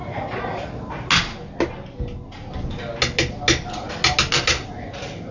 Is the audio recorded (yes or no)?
yes